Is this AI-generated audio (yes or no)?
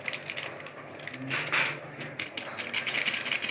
no